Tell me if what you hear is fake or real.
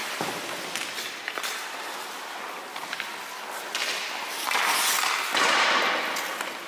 real